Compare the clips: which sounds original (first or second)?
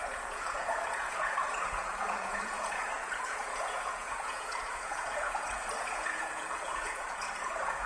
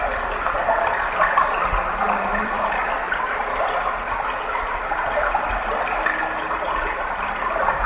second